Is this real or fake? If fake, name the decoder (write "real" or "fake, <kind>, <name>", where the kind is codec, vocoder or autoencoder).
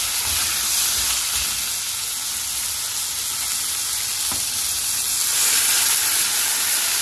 real